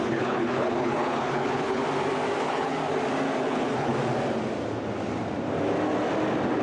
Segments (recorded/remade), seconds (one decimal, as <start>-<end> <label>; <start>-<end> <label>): 0.0-1.8 remade; 1.8-2.4 recorded; 2.4-2.8 remade; 2.8-3.5 recorded; 3.5-3.9 remade; 3.9-6.6 recorded